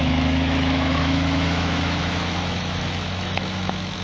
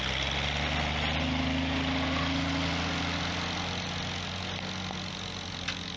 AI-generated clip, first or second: first